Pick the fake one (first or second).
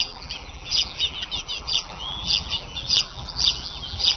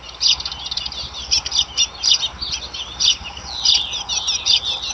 first